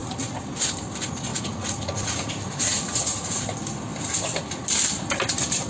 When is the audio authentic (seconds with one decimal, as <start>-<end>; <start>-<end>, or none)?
0.0-1.3; 2.3-2.7; 3.4-5.7